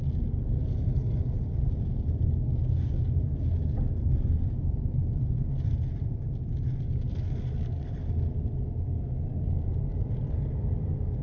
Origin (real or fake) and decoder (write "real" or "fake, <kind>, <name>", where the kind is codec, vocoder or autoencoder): real